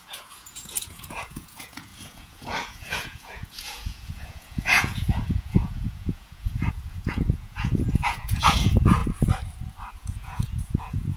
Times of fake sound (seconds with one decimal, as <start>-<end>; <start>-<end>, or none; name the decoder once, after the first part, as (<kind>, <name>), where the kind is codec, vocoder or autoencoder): 0.0-9.0 (vocoder, Vocos); 9.9-11.2